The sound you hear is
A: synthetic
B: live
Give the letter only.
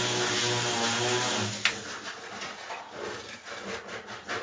B